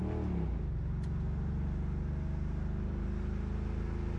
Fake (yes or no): no